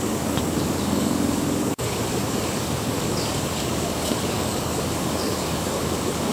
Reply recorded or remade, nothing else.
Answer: remade